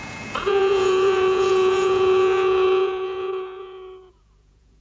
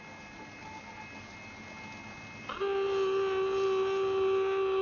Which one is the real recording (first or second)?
second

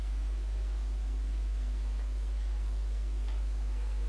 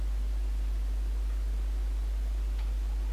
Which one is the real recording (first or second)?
second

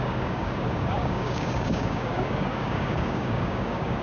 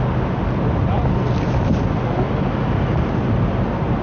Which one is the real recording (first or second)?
second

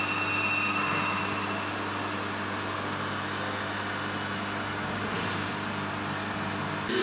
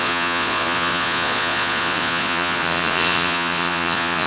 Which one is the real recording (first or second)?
first